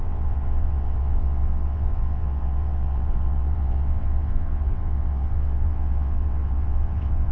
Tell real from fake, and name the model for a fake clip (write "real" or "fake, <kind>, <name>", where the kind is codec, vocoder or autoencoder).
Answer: fake, vocoder, WaveNeXt